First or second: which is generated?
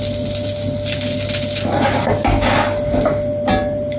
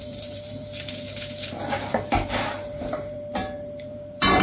second